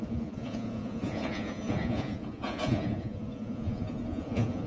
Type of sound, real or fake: fake